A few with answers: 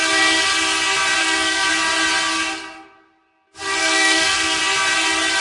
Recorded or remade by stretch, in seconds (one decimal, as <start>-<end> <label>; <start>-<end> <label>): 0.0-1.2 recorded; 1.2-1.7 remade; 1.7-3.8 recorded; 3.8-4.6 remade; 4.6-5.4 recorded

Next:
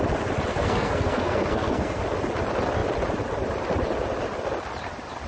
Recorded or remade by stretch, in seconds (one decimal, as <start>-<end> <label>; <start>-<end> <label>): 0.0-0.5 recorded; 0.5-2.0 remade; 2.0-5.3 recorded

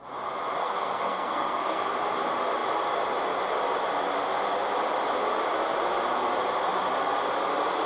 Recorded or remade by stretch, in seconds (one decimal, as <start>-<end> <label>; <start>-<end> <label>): 0.0-0.6 recorded; 0.6-1.9 remade; 1.9-7.9 recorded

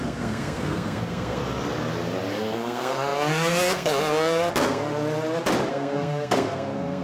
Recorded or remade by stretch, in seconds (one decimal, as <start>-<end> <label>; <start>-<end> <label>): 0.0-1.4 remade; 1.4-2.3 recorded; 2.3-4.9 remade; 4.9-5.7 recorded; 5.7-7.0 remade

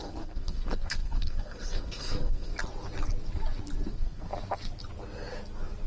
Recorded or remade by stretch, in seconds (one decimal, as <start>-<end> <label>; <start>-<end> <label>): 0.0-2.5 remade; 2.5-3.9 recorded; 3.9-4.3 remade; 4.3-5.9 recorded